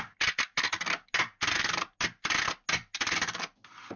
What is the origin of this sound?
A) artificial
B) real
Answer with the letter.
B